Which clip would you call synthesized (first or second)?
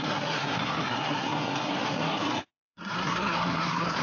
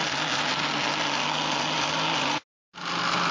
first